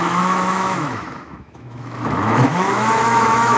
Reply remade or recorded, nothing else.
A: remade